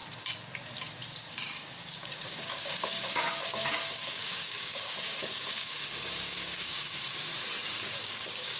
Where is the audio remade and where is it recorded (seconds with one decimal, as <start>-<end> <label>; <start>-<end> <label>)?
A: 0.0-1.3 recorded; 1.3-7.3 remade; 7.3-8.0 recorded; 8.0-8.6 remade